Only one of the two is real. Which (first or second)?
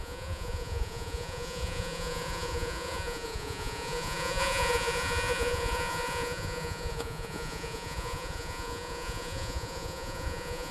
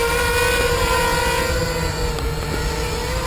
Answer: second